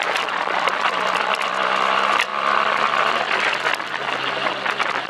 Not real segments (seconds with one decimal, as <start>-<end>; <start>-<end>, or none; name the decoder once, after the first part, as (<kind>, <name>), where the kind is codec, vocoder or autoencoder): none